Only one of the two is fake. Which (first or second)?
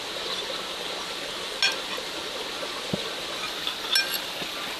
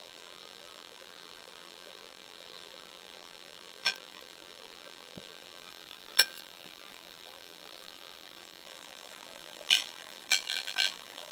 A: second